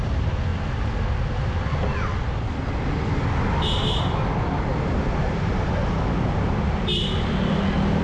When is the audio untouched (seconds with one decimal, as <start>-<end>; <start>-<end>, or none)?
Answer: 0.0-8.0